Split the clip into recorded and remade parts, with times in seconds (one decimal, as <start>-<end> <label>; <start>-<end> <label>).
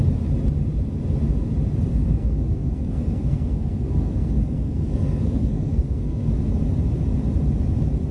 0.0-1.9 recorded; 1.9-6.3 remade; 6.3-8.1 recorded